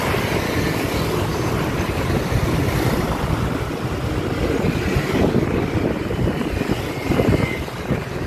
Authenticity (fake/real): real